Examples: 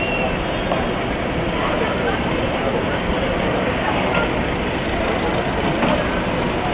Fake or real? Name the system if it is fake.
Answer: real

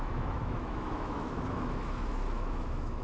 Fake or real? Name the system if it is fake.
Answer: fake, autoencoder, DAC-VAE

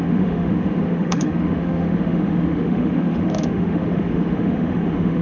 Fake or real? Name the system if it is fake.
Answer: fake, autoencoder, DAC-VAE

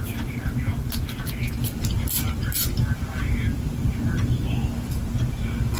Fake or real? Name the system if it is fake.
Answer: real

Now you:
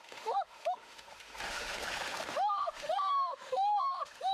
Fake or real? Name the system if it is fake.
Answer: fake, autoencoder, DAC-VAE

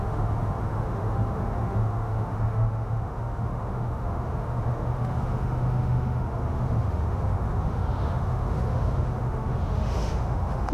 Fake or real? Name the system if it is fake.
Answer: fake, autoencoder, DAC-VAE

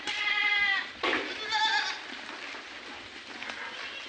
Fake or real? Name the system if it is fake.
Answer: real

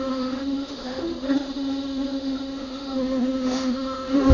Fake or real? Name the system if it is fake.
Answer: fake, autoencoder, DAC-VAE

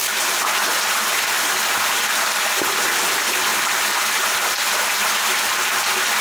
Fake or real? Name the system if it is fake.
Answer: real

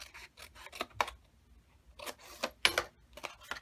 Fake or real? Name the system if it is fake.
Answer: real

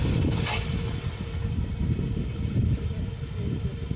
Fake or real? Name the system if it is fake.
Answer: real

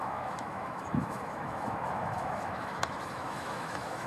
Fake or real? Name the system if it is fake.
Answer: fake, autoencoder, DAC-VAE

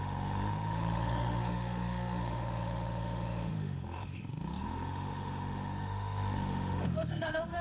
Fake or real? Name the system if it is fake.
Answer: fake, autoencoder, DAC-VAE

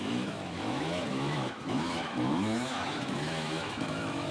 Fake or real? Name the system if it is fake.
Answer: fake, autoencoder, DAC-VAE